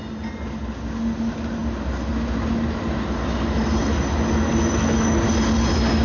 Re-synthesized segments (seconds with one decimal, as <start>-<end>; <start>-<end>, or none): none